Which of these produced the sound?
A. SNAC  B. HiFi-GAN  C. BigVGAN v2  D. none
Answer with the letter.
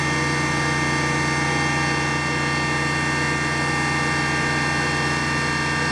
D